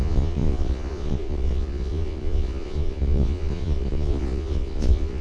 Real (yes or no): no